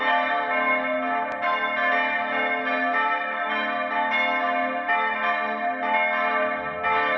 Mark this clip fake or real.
real